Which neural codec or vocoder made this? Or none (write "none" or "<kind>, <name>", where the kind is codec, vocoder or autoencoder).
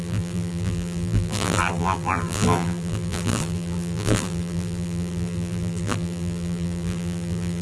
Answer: vocoder, BigVGAN v2